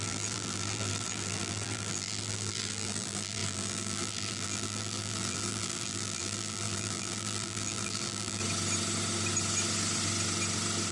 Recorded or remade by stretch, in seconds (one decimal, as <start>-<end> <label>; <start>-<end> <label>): 0.0-8.4 remade; 8.4-10.9 recorded